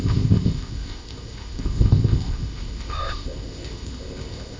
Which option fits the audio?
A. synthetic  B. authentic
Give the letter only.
A